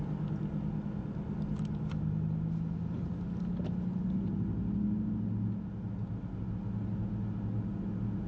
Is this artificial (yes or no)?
no